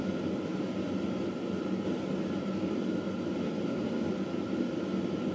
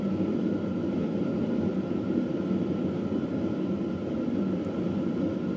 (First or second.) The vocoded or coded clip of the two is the second